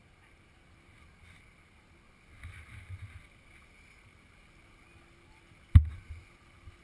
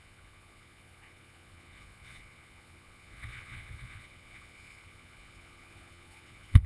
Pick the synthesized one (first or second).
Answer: second